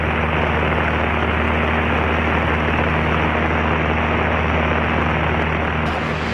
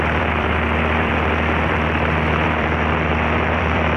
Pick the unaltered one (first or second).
first